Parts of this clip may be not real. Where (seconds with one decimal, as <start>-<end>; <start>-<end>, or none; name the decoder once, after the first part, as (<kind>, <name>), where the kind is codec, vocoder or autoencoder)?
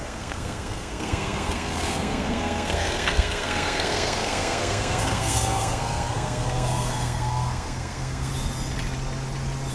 0.0-8.3 (codec, SNAC)